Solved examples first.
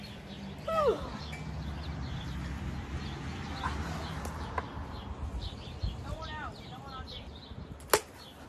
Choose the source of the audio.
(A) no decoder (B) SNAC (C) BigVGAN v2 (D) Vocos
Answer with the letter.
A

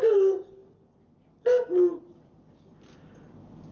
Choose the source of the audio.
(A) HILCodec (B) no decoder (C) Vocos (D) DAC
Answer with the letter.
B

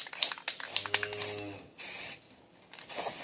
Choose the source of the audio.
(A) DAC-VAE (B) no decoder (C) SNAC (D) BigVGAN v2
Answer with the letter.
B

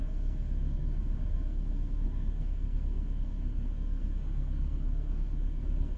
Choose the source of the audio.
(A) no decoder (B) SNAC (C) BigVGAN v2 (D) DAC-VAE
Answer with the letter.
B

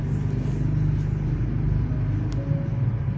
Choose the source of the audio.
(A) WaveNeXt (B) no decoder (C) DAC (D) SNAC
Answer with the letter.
B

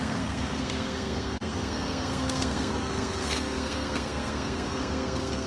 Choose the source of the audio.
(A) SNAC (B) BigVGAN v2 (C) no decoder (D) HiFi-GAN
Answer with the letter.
A